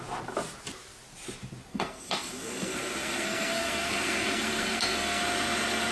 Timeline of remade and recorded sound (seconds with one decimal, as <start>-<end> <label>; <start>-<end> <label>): 0.0-1.7 recorded; 1.7-5.2 remade; 5.2-5.9 recorded